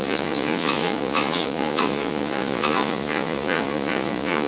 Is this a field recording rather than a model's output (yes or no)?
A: no